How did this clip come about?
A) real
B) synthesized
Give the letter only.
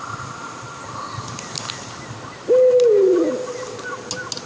A